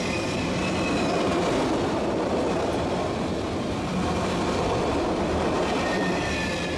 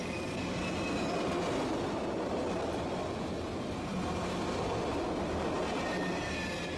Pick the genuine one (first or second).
second